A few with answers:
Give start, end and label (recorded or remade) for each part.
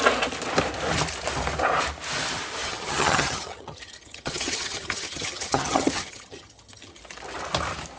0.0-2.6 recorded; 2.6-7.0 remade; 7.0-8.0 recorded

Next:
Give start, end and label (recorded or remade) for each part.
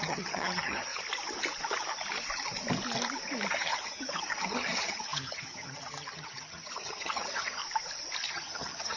0.0-0.9 remade; 0.9-3.5 recorded; 3.5-7.6 remade; 7.6-8.3 recorded; 8.3-9.0 remade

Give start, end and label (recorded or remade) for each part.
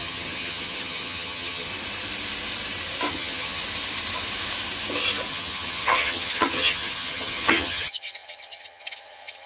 0.0-1.7 remade; 1.7-3.1 recorded; 3.1-3.6 remade; 3.6-5.3 recorded; 5.3-9.5 remade